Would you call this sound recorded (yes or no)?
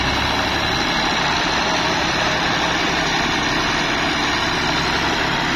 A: yes